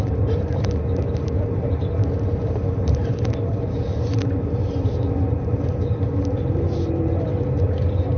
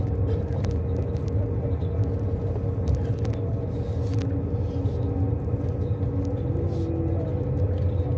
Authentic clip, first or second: second